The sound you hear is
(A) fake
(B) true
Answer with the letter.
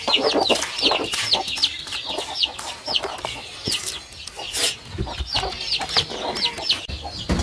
B